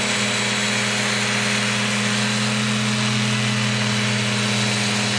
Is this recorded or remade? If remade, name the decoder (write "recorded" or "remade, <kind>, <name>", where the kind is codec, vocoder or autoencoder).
recorded